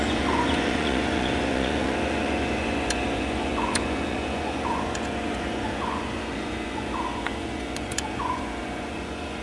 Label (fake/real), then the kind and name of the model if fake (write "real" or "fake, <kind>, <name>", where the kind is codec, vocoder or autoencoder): fake, vocoder, Vocos